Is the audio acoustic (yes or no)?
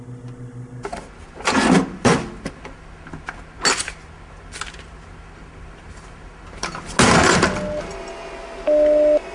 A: yes